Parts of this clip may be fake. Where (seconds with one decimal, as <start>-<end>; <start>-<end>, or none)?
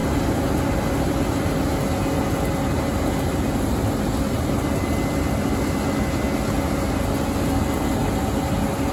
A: none